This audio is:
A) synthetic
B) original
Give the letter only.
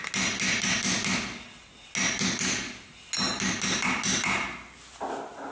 B